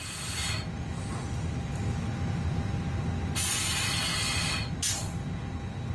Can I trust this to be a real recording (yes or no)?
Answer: yes